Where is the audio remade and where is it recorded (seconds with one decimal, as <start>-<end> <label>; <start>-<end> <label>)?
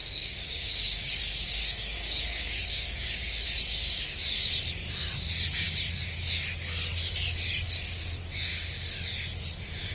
0.0-1.1 remade; 1.1-1.6 recorded; 1.6-3.3 remade; 3.3-9.9 recorded